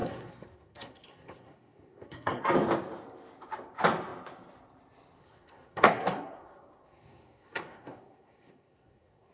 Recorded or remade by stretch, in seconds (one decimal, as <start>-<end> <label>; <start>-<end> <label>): 0.0-2.4 remade; 2.4-5.2 recorded; 5.2-9.3 remade